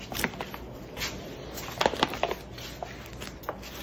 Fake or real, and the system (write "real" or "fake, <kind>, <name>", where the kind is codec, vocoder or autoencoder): real